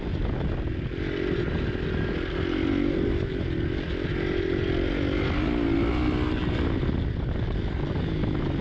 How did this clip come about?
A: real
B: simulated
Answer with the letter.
A